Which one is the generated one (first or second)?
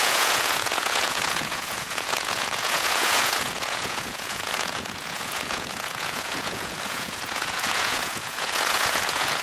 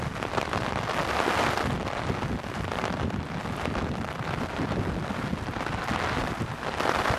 first